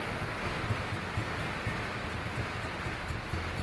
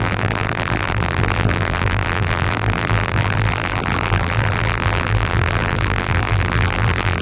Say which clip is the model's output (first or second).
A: second